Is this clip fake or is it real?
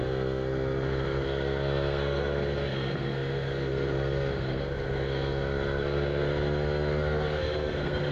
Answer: fake